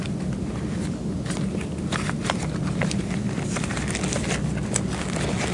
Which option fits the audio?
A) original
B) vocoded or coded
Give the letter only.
A